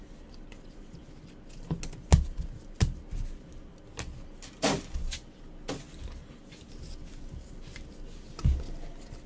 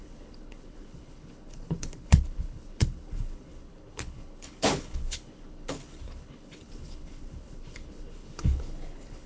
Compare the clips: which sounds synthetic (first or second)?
second